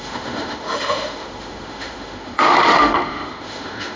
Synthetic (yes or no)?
yes